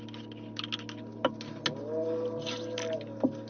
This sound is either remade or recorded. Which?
recorded